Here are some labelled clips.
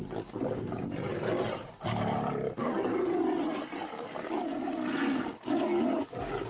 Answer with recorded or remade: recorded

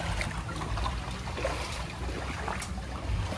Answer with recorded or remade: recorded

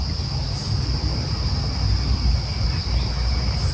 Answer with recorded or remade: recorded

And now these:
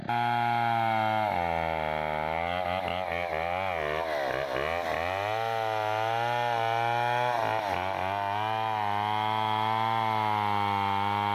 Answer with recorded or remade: recorded